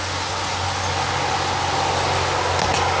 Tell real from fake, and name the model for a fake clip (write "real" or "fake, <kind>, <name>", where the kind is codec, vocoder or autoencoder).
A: real